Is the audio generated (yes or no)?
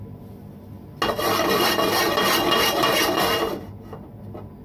no